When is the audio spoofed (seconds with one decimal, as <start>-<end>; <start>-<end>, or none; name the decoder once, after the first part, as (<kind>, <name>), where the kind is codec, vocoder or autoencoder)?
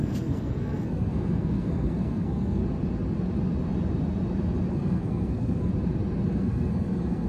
0.0-2.6 (codec, SNAC); 4.7-5.7; 6.3-7.3